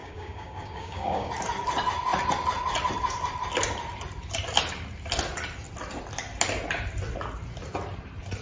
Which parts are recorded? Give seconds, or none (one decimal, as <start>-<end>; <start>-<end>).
1.3-8.4